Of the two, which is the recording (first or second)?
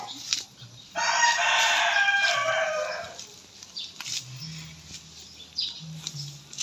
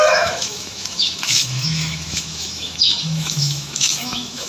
first